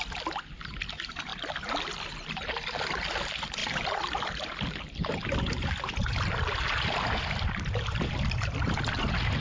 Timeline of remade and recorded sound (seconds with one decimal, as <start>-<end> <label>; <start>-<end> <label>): 0.0-3.6 recorded; 3.6-8.8 remade; 8.8-9.4 recorded